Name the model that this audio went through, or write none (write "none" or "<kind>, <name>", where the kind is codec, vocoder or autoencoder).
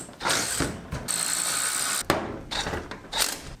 none